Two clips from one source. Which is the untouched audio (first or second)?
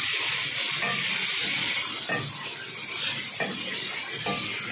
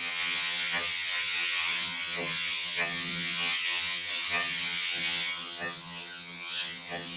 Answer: first